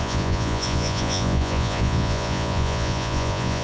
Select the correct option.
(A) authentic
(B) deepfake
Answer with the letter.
B